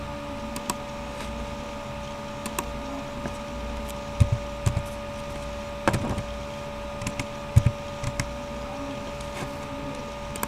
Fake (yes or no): no